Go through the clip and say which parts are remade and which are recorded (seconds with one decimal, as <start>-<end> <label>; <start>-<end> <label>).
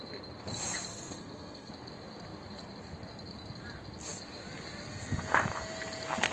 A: 0.0-0.9 recorded; 0.9-1.7 remade; 1.7-6.3 recorded